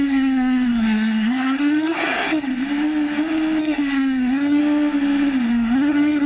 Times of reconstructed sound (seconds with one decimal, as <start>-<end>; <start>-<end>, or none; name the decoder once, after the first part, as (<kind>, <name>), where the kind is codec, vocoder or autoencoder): 0.0-2.5 (codec, SNAC); 3.6-4.6; 5.5-6.3